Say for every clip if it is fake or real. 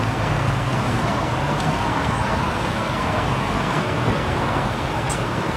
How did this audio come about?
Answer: fake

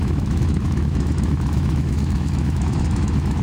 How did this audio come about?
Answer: fake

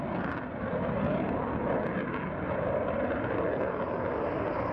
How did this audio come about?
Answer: real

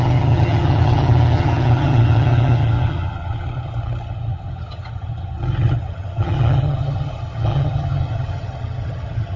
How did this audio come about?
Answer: fake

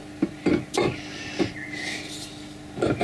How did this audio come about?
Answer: real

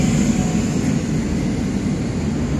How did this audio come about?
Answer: real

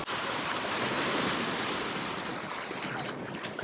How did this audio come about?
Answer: fake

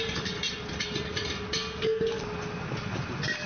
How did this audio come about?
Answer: real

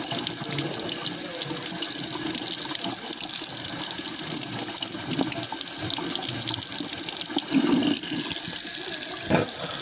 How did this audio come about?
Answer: real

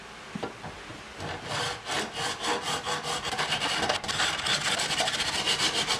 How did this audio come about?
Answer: real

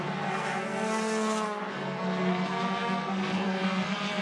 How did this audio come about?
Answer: fake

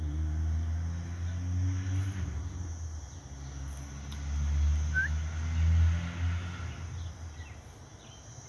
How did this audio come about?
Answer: real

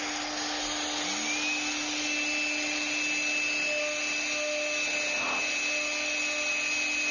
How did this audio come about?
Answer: real